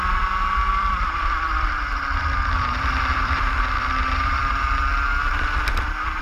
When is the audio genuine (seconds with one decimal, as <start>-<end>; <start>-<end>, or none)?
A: 0.0-0.7; 4.4-6.2